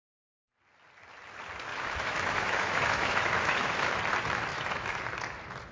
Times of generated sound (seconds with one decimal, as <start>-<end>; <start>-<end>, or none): 1.7-4.0; 4.5-5.0